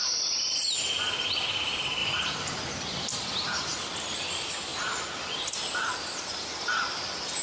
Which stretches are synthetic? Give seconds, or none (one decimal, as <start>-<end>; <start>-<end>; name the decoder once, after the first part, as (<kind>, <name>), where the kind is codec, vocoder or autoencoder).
0.0-4.7 (vocoder, BigVGAN v2); 6.3-7.4